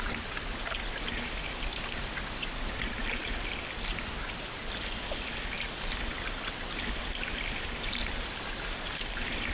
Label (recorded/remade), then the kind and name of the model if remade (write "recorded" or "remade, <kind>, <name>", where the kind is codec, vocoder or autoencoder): recorded